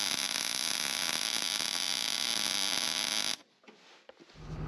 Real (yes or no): yes